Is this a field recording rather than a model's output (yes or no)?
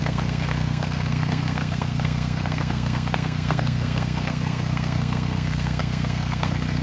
no